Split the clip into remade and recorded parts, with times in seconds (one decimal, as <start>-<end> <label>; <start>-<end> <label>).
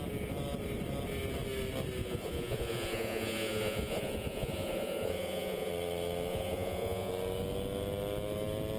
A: 0.0-2.0 recorded; 2.0-5.7 remade; 5.7-6.3 recorded; 6.3-7.1 remade; 7.1-8.8 recorded